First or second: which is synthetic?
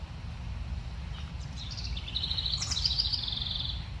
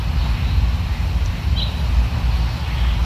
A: first